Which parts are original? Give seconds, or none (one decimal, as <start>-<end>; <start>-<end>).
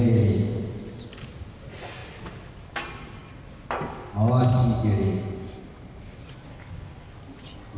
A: 0.0-6.5; 7.1-7.8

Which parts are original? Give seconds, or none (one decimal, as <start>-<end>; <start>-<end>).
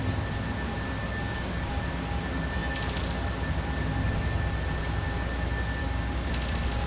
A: 0.0-1.0; 1.8-5.8; 6.3-6.9